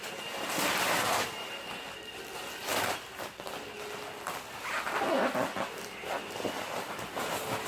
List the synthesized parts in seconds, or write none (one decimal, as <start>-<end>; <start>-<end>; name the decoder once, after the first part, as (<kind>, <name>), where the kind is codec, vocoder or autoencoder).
2.6-6.9 (vocoder, BigVGAN v2)